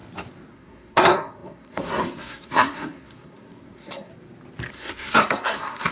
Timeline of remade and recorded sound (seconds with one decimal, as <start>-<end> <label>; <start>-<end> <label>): 0.0-0.5 recorded; 0.5-4.1 remade; 4.1-4.7 recorded; 4.7-5.9 remade